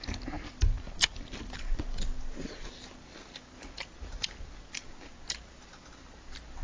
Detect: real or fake real